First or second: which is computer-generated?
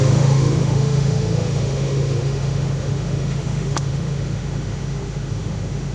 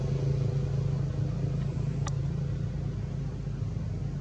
first